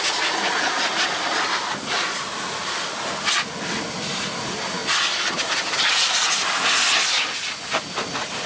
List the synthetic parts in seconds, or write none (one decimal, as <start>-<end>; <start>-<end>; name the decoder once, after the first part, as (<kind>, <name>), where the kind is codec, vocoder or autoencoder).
none